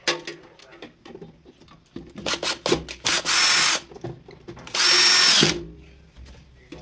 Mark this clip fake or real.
real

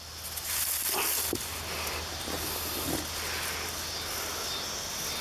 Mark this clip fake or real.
real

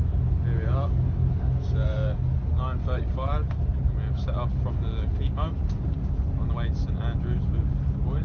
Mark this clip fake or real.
real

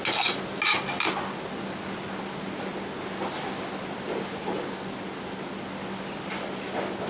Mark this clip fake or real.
real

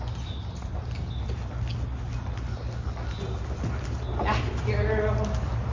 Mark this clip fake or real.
real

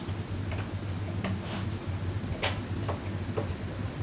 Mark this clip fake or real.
real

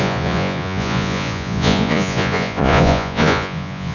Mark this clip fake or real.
fake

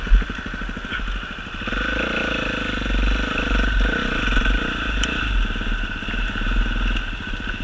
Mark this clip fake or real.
real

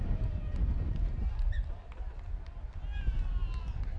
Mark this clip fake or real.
real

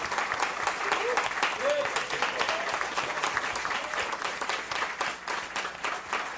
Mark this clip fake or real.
real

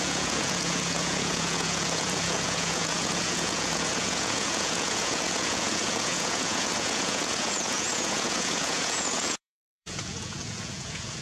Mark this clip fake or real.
fake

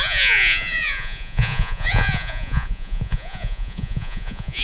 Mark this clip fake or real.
fake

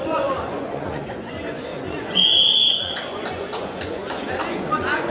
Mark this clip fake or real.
fake